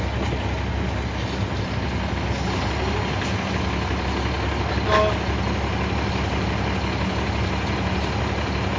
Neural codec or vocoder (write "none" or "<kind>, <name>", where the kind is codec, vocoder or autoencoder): none